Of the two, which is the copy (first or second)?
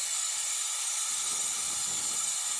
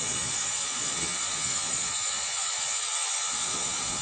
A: second